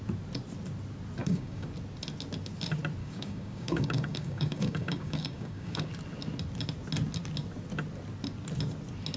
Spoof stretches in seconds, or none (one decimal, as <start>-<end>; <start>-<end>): 1.2-1.7; 3.0-5.9